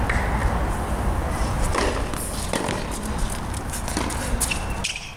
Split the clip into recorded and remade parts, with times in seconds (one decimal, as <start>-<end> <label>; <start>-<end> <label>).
0.0-0.4 recorded; 0.4-3.5 remade; 3.5-5.2 recorded